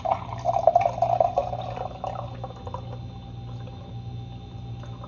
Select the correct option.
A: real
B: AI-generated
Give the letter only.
A